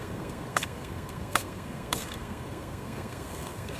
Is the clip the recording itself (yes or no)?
no